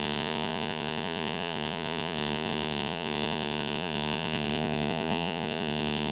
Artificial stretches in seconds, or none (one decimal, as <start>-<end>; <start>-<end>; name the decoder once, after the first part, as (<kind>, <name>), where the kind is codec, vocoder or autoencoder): 0.0-6.1 (vocoder, Vocos)

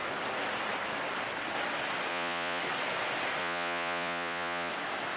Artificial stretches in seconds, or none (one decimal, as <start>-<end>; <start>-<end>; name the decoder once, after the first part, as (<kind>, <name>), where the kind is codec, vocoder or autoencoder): 2.1-2.6 (vocoder, Vocos); 3.4-4.7

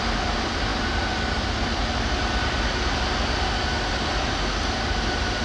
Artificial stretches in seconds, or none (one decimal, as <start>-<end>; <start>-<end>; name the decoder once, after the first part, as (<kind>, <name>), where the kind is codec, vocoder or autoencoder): none

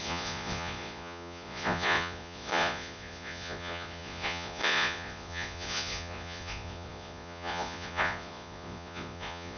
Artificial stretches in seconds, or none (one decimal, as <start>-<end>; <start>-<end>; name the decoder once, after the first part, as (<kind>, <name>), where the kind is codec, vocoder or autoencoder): 0.0-9.6 (vocoder, Vocos)

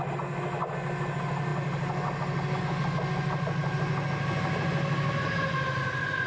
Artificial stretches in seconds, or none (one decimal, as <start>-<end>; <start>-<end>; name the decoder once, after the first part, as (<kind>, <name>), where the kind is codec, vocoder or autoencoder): none